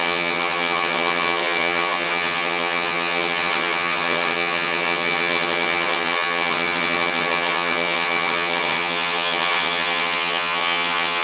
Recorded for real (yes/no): no